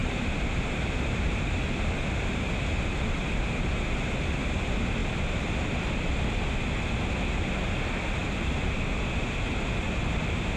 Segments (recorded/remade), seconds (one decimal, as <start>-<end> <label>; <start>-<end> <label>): 0.0-10.6 recorded